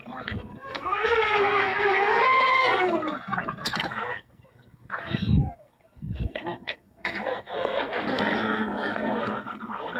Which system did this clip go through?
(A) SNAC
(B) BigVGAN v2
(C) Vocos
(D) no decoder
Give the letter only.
A